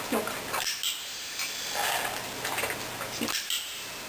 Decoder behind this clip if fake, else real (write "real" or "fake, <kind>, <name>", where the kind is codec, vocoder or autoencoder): real